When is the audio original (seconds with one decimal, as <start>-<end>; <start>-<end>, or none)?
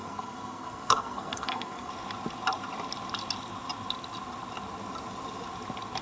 1.9-6.0